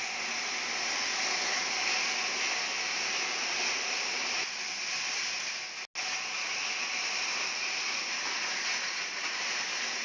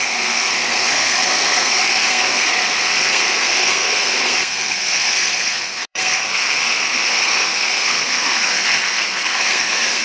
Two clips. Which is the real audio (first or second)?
first